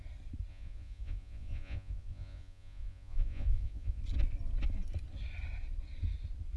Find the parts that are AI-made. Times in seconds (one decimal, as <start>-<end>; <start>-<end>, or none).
0.5-4.0